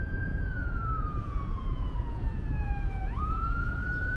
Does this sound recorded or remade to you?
remade